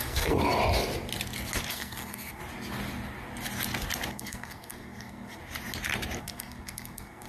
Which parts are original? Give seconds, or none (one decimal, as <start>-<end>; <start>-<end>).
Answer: 0.6-1.7; 2.4-4.1; 5.4-6.2